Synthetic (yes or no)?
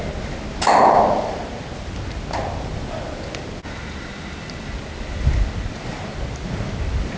no